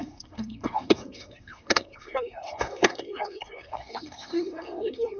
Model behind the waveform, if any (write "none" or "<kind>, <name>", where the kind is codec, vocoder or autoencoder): codec, SNAC